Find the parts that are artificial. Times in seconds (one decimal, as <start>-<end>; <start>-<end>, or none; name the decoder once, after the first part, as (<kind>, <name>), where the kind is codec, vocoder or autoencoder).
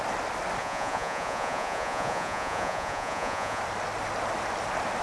0.6-3.6 (vocoder, Vocos)